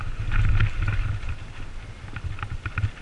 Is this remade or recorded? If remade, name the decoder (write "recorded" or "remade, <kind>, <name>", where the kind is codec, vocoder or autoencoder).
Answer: recorded